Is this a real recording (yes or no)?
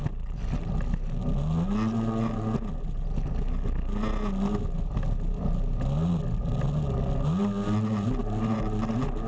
yes